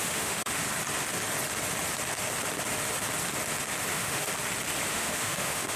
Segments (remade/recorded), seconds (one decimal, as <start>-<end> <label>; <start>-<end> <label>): 0.0-0.6 remade; 0.6-3.9 recorded; 3.9-4.3 remade; 4.3-4.9 recorded; 4.9-5.8 remade